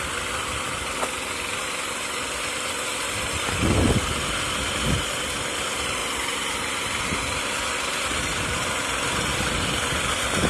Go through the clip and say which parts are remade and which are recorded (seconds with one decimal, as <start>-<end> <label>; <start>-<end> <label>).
0.0-10.5 recorded